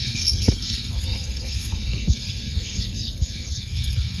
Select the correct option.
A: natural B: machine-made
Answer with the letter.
B